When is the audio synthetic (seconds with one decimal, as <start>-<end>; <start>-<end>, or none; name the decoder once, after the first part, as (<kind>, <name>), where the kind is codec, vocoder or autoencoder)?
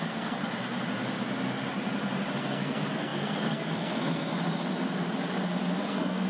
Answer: 0.0-0.4 (codec, SNAC); 2.4-4.3; 5.8-6.3